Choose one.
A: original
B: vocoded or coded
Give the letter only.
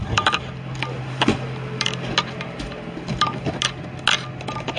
A